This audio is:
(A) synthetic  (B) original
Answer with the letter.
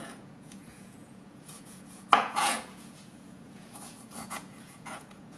A